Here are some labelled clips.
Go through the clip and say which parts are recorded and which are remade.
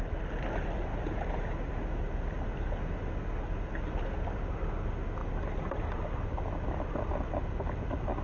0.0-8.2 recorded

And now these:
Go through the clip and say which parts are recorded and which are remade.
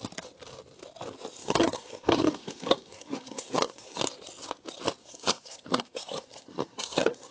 0.0-1.4 recorded; 1.4-4.0 remade; 4.0-5.0 recorded; 5.0-7.3 remade